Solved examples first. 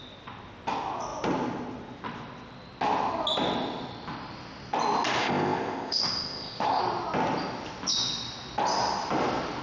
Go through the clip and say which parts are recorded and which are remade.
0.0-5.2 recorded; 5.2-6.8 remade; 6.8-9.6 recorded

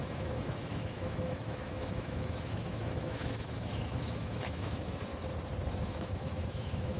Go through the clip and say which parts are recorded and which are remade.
0.0-5.1 remade; 5.1-5.7 recorded; 5.7-7.0 remade

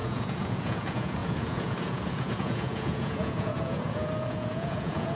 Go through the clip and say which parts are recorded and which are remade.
0.0-5.1 remade

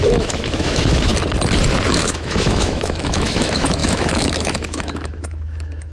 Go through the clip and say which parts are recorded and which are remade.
0.0-1.1 remade; 1.1-1.9 recorded; 1.9-5.9 remade

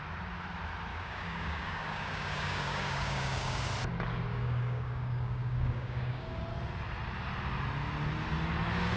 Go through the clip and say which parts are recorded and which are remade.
0.0-0.9 recorded; 0.9-3.7 remade; 3.7-4.3 recorded; 4.3-6.4 remade; 6.4-9.0 recorded

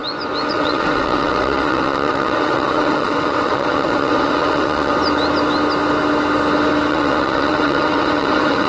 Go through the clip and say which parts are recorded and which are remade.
0.0-0.5 recorded; 0.5-4.9 remade; 4.9-6.9 recorded; 6.9-8.7 remade